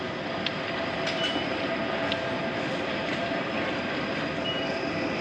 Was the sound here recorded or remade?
recorded